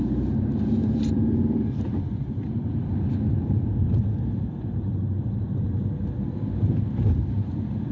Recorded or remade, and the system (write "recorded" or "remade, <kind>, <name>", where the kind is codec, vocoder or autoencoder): remade, vocoder, BigVGAN v2